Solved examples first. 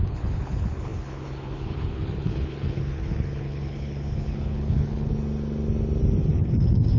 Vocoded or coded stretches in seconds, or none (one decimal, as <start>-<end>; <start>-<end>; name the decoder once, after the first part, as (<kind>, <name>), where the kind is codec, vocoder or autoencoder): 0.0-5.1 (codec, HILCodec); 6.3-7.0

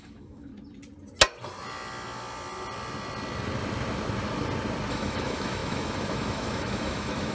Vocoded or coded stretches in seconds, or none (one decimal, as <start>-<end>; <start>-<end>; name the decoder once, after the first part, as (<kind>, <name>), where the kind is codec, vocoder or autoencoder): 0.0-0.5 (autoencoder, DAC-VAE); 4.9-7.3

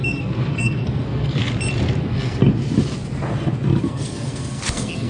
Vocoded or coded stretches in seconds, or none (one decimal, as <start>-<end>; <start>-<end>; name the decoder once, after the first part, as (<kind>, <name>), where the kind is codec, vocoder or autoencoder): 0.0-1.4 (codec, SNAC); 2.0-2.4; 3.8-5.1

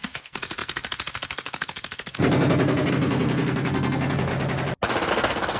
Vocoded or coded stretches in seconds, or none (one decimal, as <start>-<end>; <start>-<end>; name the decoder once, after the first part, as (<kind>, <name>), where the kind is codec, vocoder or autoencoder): 0.0-4.3 (codec, SNAC); 5.1-5.6

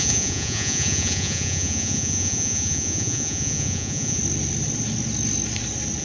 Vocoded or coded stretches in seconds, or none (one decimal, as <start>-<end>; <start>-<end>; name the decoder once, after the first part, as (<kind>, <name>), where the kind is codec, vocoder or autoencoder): 0.0-4.2 (vocoder, Vocos)

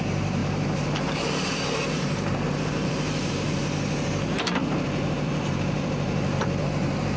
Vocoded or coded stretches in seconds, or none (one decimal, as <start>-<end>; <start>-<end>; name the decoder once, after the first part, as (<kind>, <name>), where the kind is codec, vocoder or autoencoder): 0.0-3.6 (vocoder, BigVGAN v2); 4.1-7.2

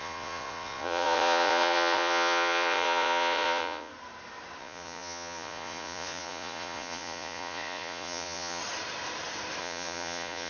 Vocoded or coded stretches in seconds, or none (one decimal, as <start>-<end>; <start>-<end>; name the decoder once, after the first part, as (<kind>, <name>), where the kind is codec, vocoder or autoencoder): 0.0-3.9 (vocoder, Vocos); 4.6-8.6; 9.6-10.5